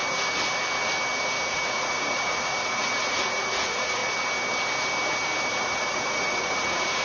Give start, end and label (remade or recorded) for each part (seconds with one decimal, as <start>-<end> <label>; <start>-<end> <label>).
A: 0.0-1.5 recorded; 1.5-4.0 remade; 4.0-5.5 recorded; 5.5-7.0 remade